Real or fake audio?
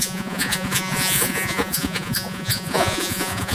fake